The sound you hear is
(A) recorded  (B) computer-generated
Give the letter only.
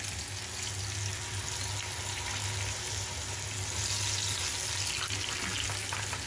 A